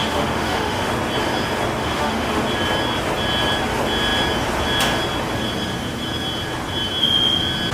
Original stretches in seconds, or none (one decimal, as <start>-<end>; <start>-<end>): 0.9-1.8; 2.4-7.7